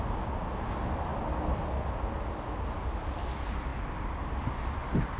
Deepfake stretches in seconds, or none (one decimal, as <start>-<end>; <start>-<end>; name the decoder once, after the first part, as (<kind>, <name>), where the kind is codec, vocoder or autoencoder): none